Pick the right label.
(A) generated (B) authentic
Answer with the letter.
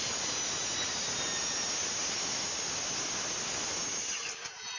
B